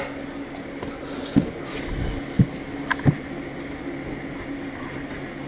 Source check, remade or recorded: recorded